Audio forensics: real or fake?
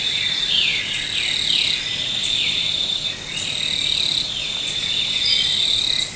real